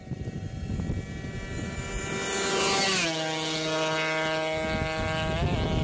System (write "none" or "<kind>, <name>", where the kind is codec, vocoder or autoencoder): none